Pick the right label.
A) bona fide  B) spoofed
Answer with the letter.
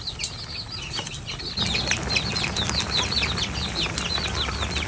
A